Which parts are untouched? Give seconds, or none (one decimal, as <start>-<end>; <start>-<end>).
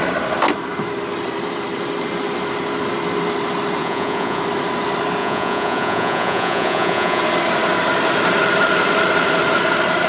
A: 0.0-3.8; 4.4-5.2; 7.2-10.1